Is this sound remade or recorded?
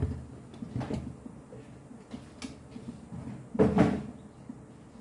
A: recorded